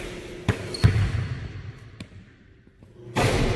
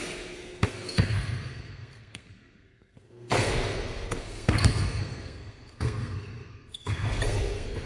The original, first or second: first